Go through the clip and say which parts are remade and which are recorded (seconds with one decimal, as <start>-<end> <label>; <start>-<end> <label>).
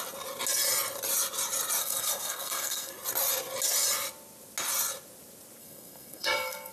0.0-1.8 recorded; 1.8-2.9 remade; 2.9-5.6 recorded; 5.6-6.7 remade